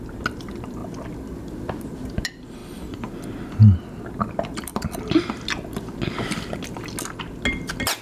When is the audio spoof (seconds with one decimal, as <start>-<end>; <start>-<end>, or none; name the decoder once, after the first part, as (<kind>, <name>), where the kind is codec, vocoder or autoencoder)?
none